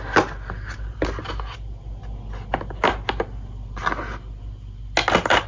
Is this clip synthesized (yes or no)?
no